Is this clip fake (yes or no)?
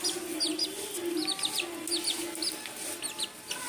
no